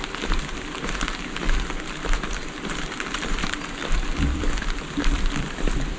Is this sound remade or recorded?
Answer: remade